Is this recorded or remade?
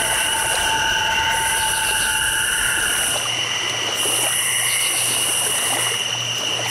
recorded